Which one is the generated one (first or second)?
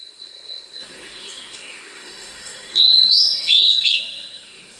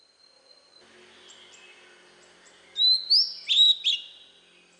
first